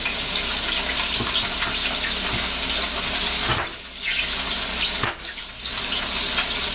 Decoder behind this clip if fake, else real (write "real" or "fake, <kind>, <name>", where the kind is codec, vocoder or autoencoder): real